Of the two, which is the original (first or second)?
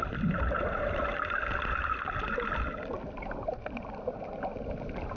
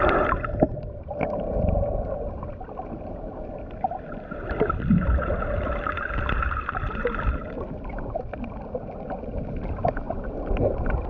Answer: first